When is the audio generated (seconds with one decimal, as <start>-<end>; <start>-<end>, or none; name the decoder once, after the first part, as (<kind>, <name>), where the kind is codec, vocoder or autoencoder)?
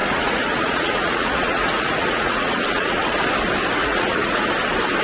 0.0-3.0 (vocoder, Vocos); 3.8-4.5